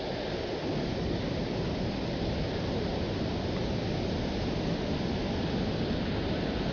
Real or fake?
real